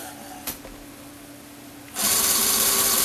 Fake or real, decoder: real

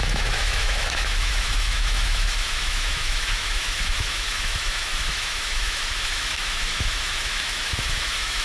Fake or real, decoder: fake, autoencoder, DAC-VAE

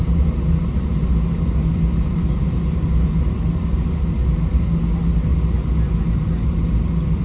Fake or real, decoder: real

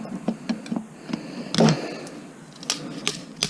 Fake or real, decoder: real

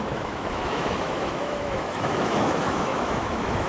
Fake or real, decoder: fake, autoencoder, DAC-VAE